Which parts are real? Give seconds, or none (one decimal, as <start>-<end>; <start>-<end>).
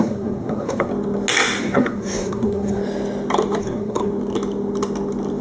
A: 0.9-1.6; 2.8-3.6; 4.1-5.4